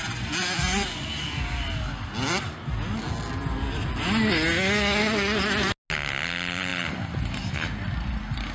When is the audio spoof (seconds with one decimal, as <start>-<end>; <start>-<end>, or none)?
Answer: none